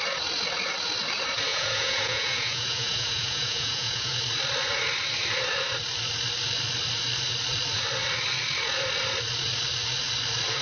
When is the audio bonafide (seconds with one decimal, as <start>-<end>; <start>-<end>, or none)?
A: 0.0-1.5; 4.2-10.6

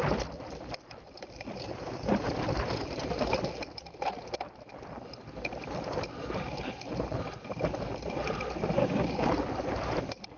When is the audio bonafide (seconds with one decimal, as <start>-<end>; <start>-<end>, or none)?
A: 0.0-8.8; 9.3-10.4

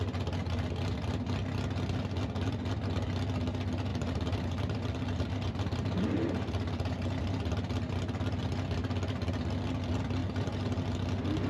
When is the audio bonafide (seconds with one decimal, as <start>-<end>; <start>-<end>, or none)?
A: 0.0-3.9; 7.3-10.2; 10.9-11.5

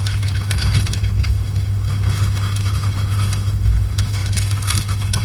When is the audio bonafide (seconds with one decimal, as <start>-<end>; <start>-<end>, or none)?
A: none

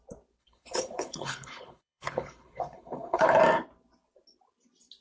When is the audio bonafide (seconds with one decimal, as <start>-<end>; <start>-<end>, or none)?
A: 0.0-0.4; 3.4-5.0

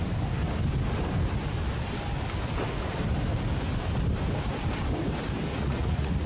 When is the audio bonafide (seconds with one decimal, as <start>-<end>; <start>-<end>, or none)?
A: 0.0-5.5

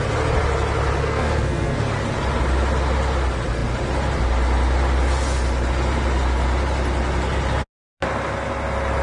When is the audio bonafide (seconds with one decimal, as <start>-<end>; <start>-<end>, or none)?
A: 0.0-1.0; 1.8-9.0